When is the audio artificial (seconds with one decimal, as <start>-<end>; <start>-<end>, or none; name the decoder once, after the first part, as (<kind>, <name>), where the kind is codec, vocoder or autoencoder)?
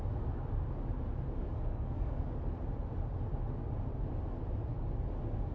1.4-2.3 (codec, DAC)